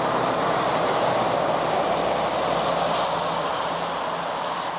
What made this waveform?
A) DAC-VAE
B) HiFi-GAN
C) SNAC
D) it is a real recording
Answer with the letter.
D